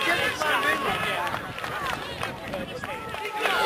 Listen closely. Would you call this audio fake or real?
real